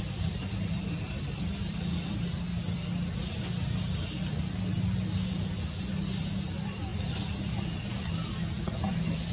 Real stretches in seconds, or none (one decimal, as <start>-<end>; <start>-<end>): 0.0-9.3

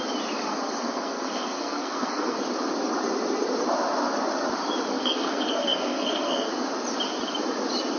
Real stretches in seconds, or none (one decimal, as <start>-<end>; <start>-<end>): 0.0-0.5; 2.4-4.9; 6.5-8.0

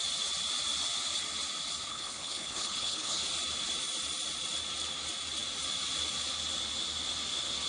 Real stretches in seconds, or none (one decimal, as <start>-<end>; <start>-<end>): 0.0-1.9; 3.2-7.7

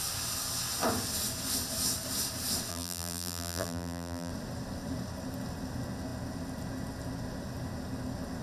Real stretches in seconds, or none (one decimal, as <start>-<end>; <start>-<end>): 0.0-2.7; 4.3-8.4

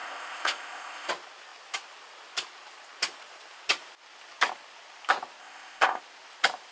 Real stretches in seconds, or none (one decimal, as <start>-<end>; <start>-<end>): 1.1-5.4; 6.0-6.7